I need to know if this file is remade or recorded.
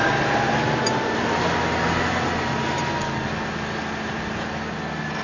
recorded